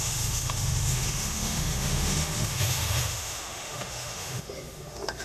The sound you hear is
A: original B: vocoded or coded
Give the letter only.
B